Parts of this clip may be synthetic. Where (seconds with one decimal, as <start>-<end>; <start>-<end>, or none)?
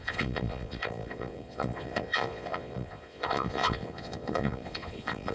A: 0.0-5.3